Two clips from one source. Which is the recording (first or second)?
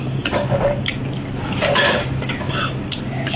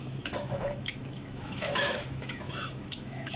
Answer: first